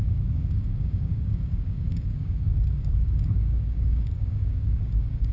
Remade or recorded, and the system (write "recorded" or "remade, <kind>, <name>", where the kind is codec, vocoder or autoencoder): remade, codec, DAC